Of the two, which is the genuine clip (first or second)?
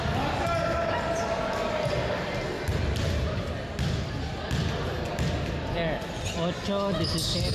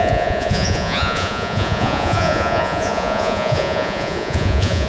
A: first